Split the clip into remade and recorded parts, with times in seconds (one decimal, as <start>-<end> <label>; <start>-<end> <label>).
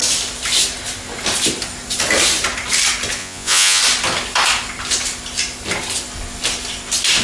0.0-3.2 recorded; 3.2-3.8 remade; 3.8-7.2 recorded